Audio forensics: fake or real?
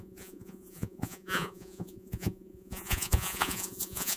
fake